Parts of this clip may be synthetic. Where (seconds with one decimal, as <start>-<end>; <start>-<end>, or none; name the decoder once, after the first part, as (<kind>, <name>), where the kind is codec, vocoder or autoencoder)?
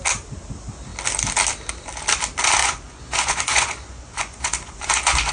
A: 2.6-5.3 (vocoder, Vocos)